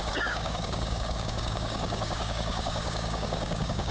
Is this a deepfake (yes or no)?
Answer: yes